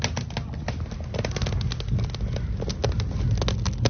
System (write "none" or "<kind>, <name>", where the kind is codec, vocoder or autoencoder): none